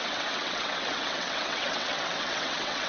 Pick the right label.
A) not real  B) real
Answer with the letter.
A